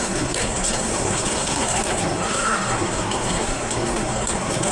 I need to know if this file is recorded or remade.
remade